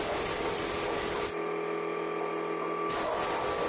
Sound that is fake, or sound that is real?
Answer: real